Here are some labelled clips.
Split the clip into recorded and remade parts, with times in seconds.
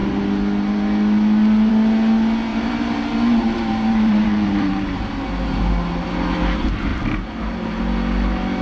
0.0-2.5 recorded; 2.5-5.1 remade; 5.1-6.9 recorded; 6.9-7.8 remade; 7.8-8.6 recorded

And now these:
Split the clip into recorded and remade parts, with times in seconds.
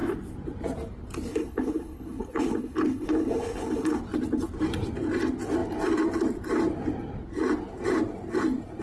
0.0-1.3 recorded; 1.3-4.0 remade; 4.0-8.8 recorded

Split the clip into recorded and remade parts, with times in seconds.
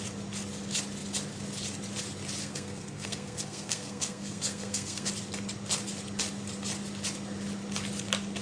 0.0-2.4 recorded; 2.4-5.1 remade; 5.1-8.4 recorded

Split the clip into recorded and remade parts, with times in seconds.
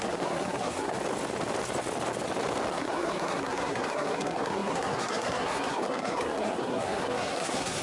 0.0-1.0 remade; 1.0-2.7 recorded; 2.7-7.8 remade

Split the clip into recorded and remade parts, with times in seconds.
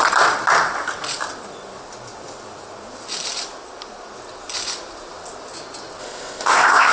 0.0-6.0 recorded; 6.0-6.9 remade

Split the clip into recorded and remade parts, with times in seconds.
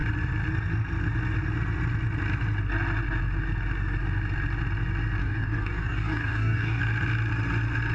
0.0-5.2 recorded; 5.2-6.8 remade; 6.8-7.9 recorded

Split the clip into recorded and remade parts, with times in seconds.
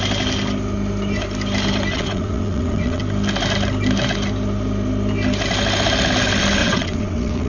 0.0-1.9 recorded; 1.9-3.0 remade; 3.0-6.6 recorded; 6.6-7.5 remade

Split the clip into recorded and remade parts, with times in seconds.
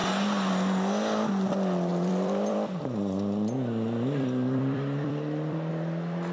0.0-1.9 recorded; 1.9-5.7 remade; 5.7-6.3 recorded